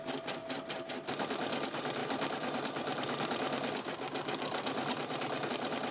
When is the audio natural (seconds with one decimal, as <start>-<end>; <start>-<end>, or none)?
0.0-5.9